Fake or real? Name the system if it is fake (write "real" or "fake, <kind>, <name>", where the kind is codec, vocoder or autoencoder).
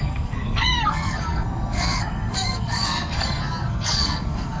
fake, codec, SNAC